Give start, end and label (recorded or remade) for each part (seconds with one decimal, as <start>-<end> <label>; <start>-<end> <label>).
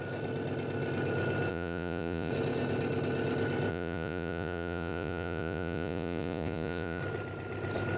0.0-1.5 recorded; 1.5-2.3 remade; 2.3-3.7 recorded; 3.7-7.0 remade; 7.0-8.0 recorded